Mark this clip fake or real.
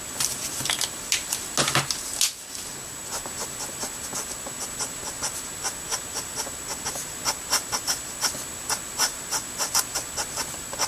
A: real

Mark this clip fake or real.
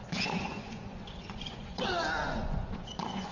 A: fake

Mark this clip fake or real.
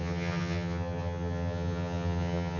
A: fake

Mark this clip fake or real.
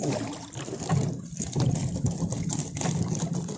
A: fake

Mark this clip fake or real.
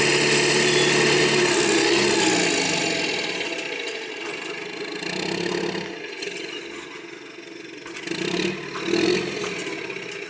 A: real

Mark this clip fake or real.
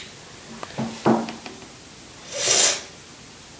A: real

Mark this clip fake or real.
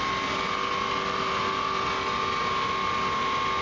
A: real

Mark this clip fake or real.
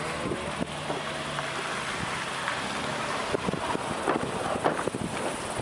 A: real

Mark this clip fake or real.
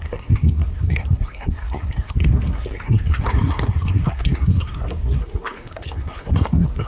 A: fake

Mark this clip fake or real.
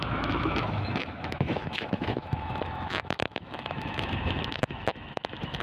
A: fake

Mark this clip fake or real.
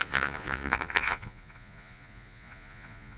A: fake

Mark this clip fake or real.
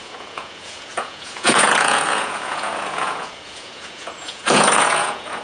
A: fake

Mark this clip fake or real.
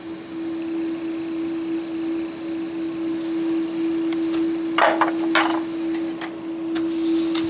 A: real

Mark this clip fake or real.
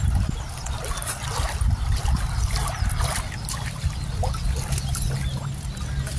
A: real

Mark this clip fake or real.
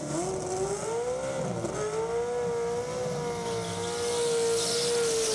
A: real